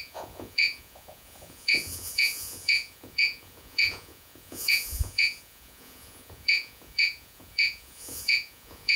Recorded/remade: remade